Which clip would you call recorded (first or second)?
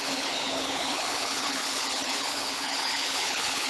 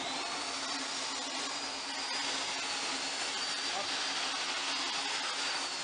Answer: second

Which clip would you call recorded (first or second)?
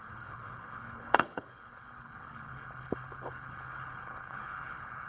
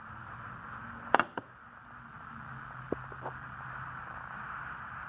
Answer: second